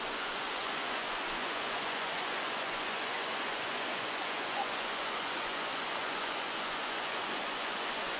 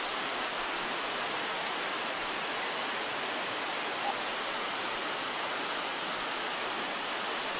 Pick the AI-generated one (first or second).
first